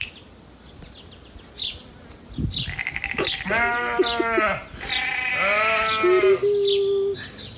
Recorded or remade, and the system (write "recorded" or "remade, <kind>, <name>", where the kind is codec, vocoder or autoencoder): recorded